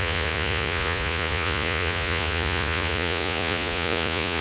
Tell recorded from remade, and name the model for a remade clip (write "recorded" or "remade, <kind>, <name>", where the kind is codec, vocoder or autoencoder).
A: remade, vocoder, Vocos